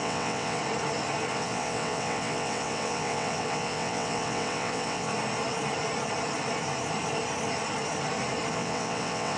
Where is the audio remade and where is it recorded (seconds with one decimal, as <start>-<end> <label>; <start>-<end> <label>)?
0.0-0.6 remade; 0.6-1.3 recorded; 1.3-5.1 remade; 5.1-8.5 recorded; 8.5-9.4 remade